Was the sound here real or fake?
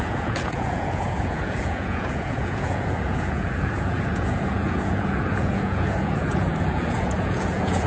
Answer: fake